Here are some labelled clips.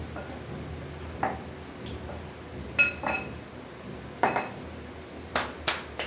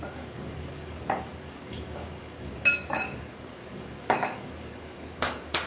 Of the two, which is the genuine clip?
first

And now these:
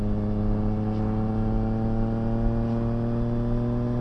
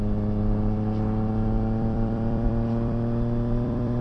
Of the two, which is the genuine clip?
first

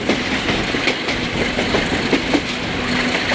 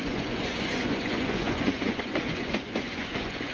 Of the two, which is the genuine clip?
first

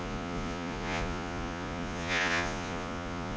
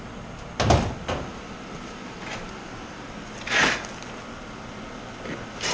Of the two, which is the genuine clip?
second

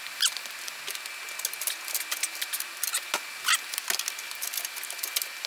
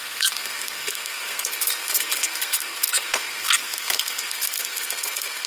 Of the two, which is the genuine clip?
first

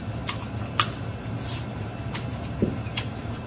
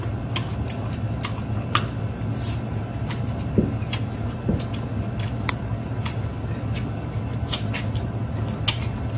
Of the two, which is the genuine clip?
second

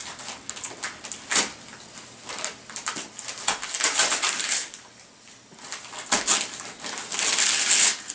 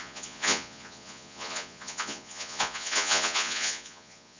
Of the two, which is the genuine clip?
first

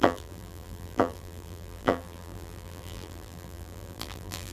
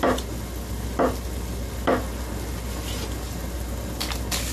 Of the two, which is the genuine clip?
second